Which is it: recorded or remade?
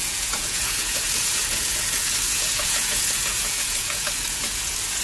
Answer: remade